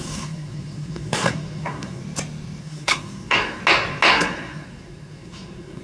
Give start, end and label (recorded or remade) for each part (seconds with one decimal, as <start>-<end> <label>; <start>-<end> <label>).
0.0-2.0 remade; 2.0-2.6 recorded; 2.6-3.6 remade; 3.6-4.1 recorded; 4.1-5.8 remade